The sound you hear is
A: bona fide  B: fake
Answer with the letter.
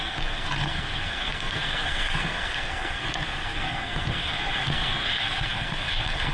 B